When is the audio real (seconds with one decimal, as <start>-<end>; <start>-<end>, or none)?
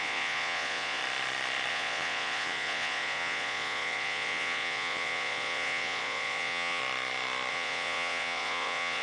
1.0-1.7; 6.8-7.5